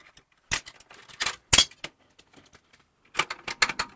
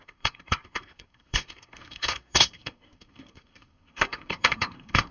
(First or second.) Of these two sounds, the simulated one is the second